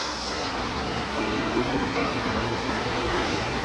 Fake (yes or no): yes